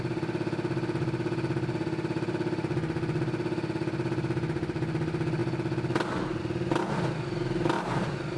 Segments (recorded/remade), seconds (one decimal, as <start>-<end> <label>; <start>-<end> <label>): 0.0-8.4 recorded